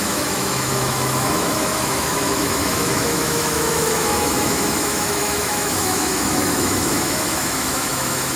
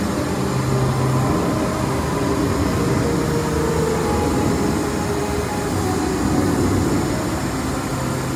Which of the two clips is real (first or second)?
second